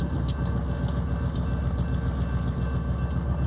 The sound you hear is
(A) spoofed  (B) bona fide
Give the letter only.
B